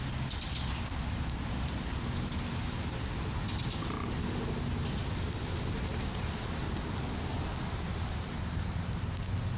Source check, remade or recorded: recorded